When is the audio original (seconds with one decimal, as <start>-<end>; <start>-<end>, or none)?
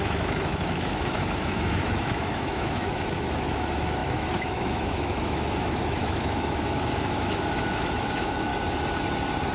8.5-9.5